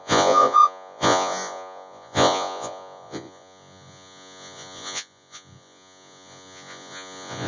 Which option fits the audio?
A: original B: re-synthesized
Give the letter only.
B